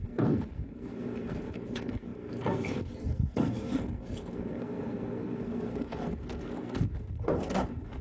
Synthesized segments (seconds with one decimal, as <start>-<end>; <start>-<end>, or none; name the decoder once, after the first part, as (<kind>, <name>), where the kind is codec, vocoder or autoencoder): 0.0-8.0 (codec, SNAC)